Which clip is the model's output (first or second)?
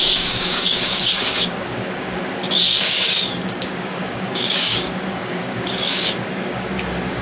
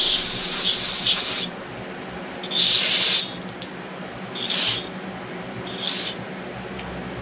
first